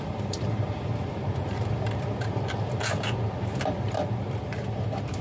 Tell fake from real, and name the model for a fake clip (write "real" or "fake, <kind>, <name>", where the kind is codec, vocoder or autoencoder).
fake, vocoder, BigVGAN v2